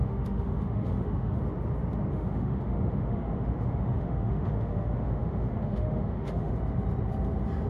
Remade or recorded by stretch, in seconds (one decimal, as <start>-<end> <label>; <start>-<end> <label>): 0.0-1.4 remade; 1.4-2.1 recorded; 2.1-6.5 remade; 6.5-7.7 recorded